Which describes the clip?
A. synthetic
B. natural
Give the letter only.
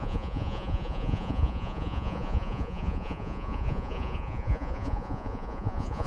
A